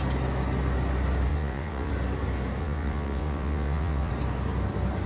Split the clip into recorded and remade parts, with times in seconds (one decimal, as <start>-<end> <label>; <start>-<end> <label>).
0.0-1.3 recorded; 1.3-1.9 remade; 1.9-2.6 recorded; 2.6-4.1 remade; 4.1-5.1 recorded